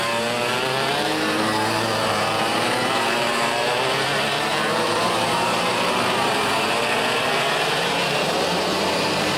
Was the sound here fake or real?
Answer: fake